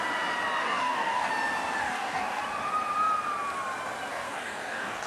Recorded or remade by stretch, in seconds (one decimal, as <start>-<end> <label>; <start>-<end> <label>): 0.0-0.6 recorded; 0.6-1.3 remade; 1.3-1.8 recorded; 1.8-2.4 remade; 2.4-4.1 recorded; 4.1-5.1 remade